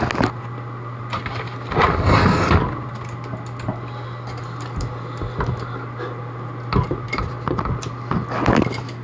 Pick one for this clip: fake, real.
real